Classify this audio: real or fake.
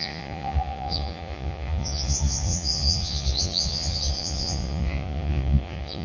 fake